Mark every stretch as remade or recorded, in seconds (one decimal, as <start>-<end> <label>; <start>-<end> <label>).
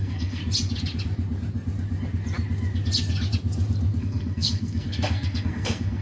0.0-0.4 remade; 0.4-4.0 recorded; 4.0-6.0 remade